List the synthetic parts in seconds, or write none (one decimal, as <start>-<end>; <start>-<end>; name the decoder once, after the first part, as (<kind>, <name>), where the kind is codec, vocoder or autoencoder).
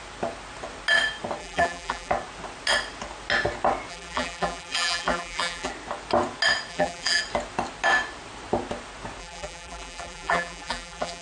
1.4-2.1 (vocoder, BigVGAN v2); 3.9-5.7; 6.7-7.2; 9.2-11.2